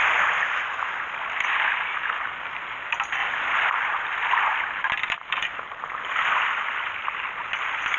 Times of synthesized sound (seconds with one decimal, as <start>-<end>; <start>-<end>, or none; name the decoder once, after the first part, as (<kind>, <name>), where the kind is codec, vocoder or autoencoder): none

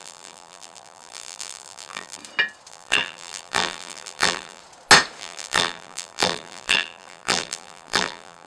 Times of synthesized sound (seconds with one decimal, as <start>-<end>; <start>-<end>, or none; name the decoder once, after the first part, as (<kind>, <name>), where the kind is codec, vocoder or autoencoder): 0.0-2.2 (vocoder, BigVGAN v2); 2.7-4.6; 5.2-8.5

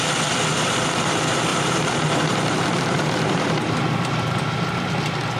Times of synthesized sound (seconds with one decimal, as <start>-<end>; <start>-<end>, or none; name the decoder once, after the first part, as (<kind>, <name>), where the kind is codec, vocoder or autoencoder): 1.5-3.7 (vocoder, BigVGAN v2)

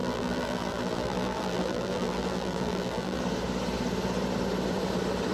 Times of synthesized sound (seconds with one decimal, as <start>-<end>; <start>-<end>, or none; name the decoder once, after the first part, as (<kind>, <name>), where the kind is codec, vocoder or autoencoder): 0.0-3.2 (vocoder, BigVGAN v2)

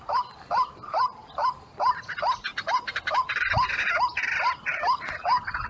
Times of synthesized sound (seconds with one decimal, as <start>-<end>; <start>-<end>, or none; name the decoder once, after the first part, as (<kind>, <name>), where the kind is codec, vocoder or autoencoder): none

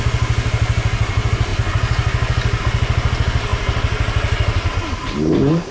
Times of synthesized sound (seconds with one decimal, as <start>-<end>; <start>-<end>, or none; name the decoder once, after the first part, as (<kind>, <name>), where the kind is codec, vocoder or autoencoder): none

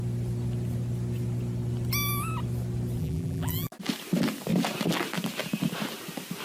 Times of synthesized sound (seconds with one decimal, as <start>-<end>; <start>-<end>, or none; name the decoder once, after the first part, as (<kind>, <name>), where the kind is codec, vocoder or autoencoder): 3.0-3.7 (vocoder, BigVGAN v2)

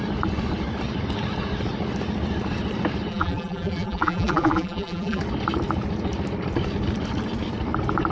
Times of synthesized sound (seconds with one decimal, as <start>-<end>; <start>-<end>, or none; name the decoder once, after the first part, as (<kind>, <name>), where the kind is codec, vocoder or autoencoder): 3.1-5.2 (vocoder, BigVGAN v2)